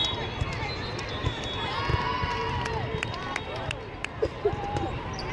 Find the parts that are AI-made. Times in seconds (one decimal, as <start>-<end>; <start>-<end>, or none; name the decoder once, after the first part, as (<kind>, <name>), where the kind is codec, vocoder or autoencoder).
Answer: 1.9-5.3 (vocoder, BigVGAN v2)